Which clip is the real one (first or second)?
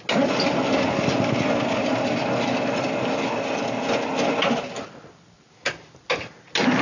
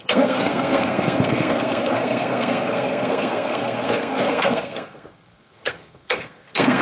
first